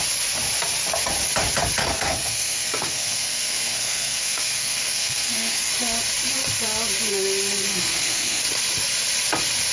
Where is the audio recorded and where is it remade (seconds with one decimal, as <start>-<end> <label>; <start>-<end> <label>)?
0.0-1.8 recorded; 1.8-5.7 remade; 5.7-7.7 recorded; 7.7-8.4 remade; 8.4-9.7 recorded